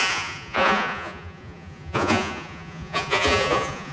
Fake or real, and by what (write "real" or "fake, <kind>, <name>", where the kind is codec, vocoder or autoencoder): fake, vocoder, Vocos